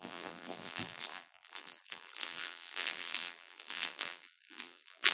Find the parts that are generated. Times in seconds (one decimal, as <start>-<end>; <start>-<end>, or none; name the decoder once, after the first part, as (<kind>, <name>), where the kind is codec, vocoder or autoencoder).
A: 0.0-5.1 (vocoder, BigVGAN v2)